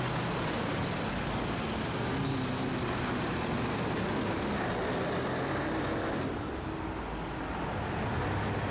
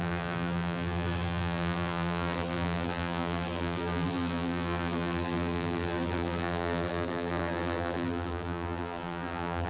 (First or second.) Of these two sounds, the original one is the first